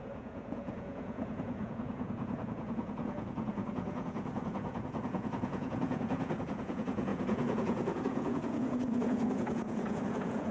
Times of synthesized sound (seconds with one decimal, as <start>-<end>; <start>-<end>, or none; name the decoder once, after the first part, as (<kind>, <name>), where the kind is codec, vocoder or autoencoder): 0.0-10.5 (vocoder, Vocos)